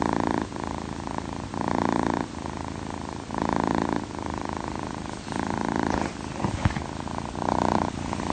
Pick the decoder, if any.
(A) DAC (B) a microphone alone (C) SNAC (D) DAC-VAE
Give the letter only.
B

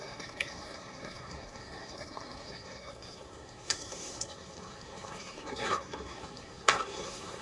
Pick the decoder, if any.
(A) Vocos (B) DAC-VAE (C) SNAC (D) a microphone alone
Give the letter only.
C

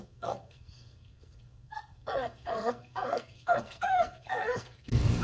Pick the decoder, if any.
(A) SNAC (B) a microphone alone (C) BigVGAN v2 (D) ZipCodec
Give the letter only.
A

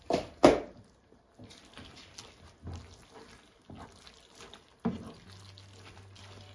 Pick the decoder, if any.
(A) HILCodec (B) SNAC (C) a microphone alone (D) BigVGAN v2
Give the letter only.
C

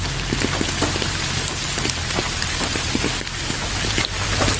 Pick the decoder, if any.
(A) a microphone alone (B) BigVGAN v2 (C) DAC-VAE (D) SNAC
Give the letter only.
A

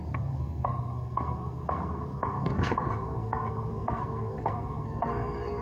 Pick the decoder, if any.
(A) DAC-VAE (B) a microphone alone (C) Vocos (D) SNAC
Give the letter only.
D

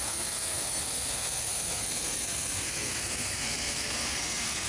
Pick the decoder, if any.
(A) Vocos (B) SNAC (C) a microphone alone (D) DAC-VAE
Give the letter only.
B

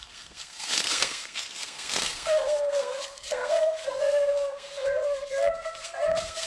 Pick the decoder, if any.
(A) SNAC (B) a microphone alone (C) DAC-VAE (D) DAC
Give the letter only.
A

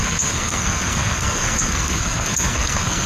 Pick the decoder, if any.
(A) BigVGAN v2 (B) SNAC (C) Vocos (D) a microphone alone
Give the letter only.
B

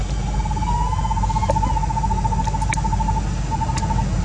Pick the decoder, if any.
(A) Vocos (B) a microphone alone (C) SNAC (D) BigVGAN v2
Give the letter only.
B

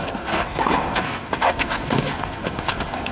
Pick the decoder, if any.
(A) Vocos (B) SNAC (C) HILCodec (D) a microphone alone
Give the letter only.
B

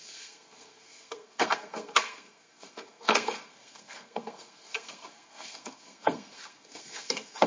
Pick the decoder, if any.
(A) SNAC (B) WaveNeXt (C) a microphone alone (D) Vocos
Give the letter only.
A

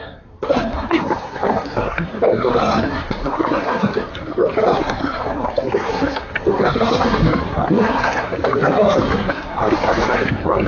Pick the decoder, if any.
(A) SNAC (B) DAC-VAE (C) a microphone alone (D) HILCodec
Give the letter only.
A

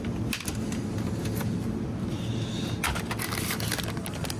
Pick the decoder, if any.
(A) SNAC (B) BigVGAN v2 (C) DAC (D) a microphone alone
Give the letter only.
D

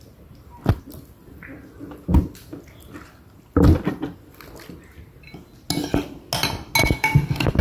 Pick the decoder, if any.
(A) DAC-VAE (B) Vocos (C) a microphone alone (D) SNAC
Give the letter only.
C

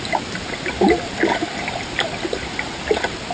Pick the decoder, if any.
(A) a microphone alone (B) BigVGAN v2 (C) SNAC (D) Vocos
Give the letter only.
A